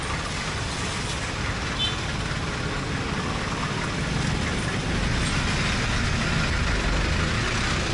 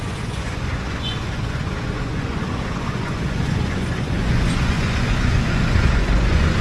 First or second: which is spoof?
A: second